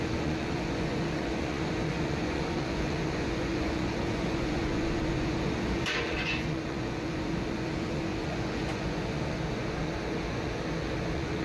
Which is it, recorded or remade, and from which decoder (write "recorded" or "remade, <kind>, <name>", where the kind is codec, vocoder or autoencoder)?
remade, vocoder, Vocos